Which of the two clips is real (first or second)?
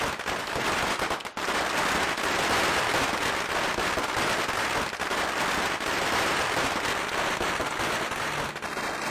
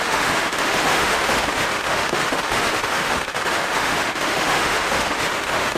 first